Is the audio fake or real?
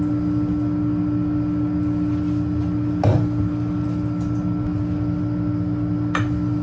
real